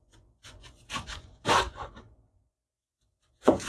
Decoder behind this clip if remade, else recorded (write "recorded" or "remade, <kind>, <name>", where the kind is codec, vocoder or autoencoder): remade, vocoder, Vocos